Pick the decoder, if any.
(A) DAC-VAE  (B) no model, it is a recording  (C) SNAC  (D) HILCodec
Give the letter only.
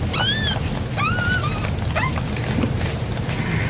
B